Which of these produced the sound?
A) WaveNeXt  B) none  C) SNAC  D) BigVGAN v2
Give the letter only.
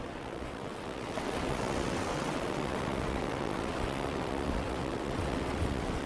A